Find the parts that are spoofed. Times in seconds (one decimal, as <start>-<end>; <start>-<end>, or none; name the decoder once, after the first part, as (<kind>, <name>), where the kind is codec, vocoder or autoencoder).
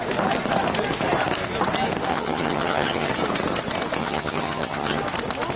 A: 2.1-3.1 (vocoder, HiFi-GAN); 4.0-5.0